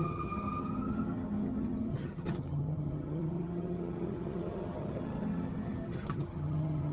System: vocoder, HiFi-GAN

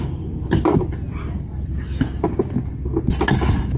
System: none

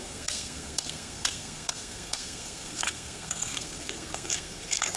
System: codec, SNAC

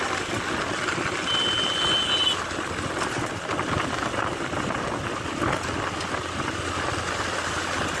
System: none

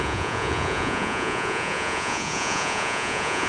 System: vocoder, Vocos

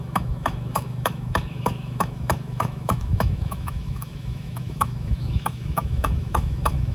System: autoencoder, DAC-VAE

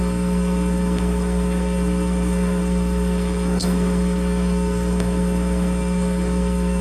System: codec, SNAC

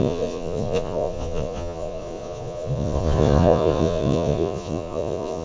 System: vocoder, Vocos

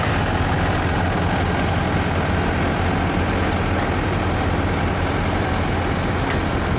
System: none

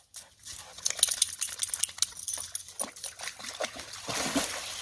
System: none